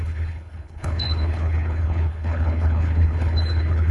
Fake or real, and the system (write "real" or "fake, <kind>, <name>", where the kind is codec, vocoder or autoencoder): fake, codec, HILCodec